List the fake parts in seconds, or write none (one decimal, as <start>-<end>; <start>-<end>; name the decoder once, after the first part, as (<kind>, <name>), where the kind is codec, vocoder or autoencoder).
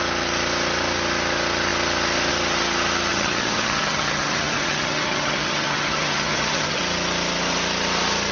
3.1-6.8 (vocoder, HiFi-GAN)